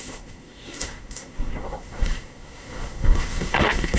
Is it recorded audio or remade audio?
remade